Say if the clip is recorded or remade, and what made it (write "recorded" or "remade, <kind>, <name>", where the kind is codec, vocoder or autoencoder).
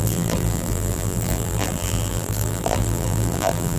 remade, vocoder, BigVGAN v2